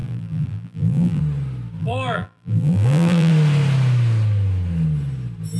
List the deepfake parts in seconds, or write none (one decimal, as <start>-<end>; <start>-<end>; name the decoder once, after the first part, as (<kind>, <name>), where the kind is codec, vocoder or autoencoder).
0.0-1.2 (vocoder, BigVGAN v2); 1.8-3.3